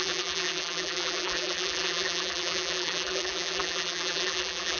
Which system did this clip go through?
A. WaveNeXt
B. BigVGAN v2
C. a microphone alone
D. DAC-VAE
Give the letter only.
B